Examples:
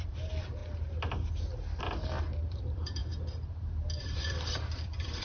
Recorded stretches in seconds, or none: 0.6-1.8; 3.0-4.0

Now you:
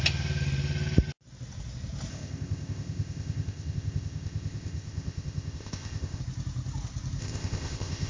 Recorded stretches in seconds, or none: 0.0-2.1; 6.2-7.2

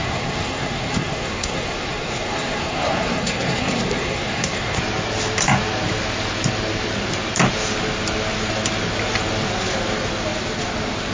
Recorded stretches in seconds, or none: 4.8-11.1

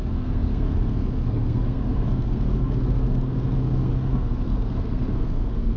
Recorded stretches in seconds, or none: none

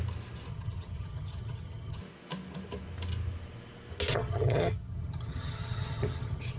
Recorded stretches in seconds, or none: 0.0-0.5; 2.0-4.1

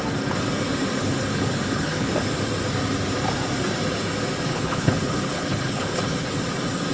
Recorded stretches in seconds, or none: 0.0-1.0; 2.1-4.5; 6.3-6.9

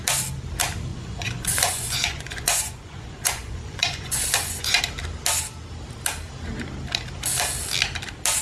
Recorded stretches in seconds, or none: 0.0-0.9; 4.8-8.4